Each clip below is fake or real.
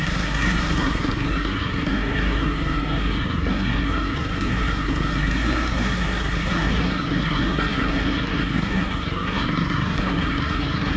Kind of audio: fake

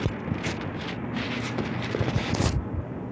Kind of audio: real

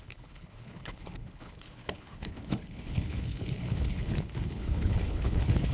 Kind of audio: fake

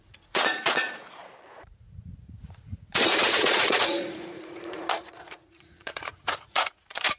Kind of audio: fake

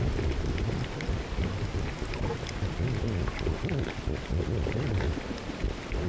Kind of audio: real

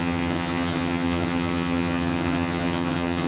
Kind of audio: fake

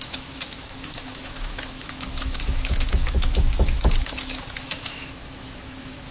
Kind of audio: fake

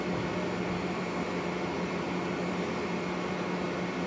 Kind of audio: real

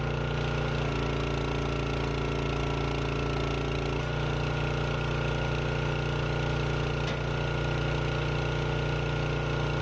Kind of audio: real